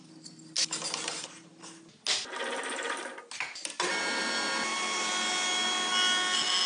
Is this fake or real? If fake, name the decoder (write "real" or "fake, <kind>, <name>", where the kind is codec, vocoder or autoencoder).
real